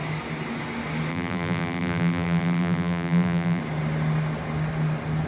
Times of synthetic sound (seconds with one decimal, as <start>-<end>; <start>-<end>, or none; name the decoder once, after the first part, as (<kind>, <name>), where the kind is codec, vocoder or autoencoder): 1.1-3.6 (vocoder, BigVGAN v2)